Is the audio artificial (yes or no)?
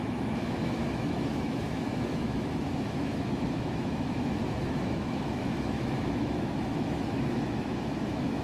yes